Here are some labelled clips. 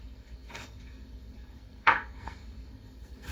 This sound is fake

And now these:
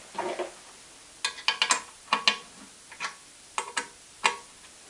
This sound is real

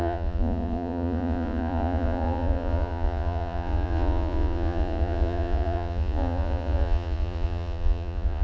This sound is fake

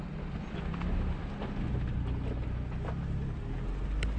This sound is real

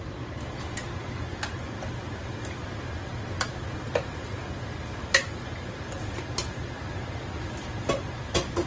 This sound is real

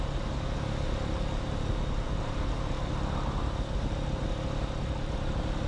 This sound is real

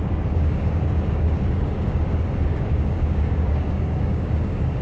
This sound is fake